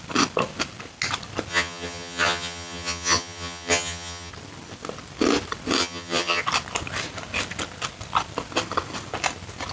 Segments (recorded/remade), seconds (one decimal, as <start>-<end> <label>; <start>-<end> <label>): 0.0-1.5 recorded; 1.5-4.3 remade; 4.3-5.8 recorded; 5.8-6.4 remade; 6.4-9.7 recorded